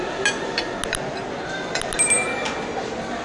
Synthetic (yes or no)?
no